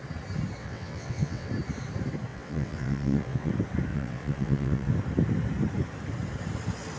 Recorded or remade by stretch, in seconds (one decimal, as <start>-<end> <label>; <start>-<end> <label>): 0.0-0.6 recorded; 0.6-1.5 remade; 1.5-2.3 recorded; 2.3-3.5 remade; 3.5-3.9 recorded; 3.9-4.9 remade; 4.9-7.0 recorded

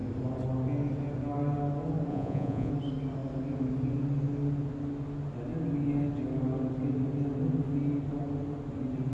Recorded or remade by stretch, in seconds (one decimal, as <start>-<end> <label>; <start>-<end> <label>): 0.0-2.1 recorded; 2.1-2.7 remade; 2.7-9.1 recorded

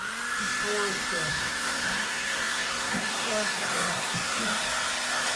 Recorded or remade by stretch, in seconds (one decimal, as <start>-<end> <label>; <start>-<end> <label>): 0.0-1.3 recorded; 1.3-4.4 remade; 4.4-5.4 recorded

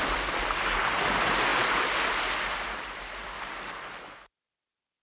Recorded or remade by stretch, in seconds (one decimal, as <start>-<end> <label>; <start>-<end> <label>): 0.0-5.0 recorded

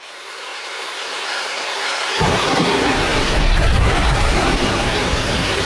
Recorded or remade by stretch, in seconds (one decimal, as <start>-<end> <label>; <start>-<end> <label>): 0.0-5.6 remade

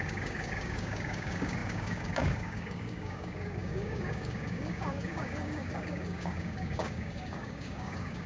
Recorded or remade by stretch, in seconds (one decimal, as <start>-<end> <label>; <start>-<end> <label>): 0.0-8.3 remade

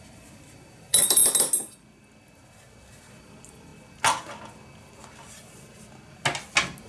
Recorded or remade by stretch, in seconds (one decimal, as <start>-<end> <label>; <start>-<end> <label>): 0.0-1.2 remade; 1.2-3.1 recorded; 3.1-3.7 remade; 3.7-6.9 recorded

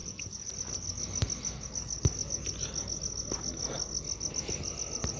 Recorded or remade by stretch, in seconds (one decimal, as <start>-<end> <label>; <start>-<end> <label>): 0.0-0.5 remade; 0.5-5.2 recorded